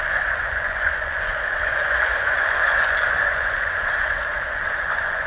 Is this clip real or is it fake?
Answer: fake